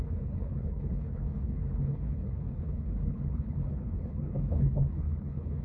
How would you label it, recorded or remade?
remade